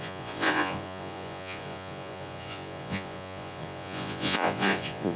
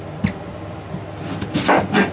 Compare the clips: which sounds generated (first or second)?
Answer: first